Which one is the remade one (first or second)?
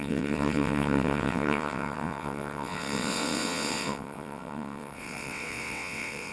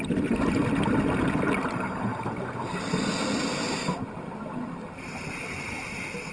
first